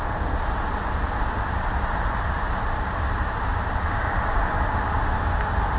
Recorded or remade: recorded